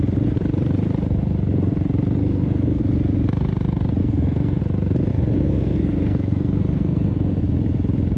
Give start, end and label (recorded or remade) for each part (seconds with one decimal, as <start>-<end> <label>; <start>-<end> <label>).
0.0-2.2 recorded; 2.2-2.8 remade; 2.8-4.0 recorded; 4.0-4.6 remade; 4.6-5.1 recorded; 5.1-7.4 remade; 7.4-8.2 recorded